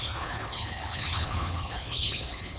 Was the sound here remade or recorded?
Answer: remade